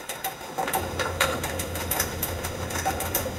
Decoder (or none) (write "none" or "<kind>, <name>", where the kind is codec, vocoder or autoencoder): autoencoder, DAC-VAE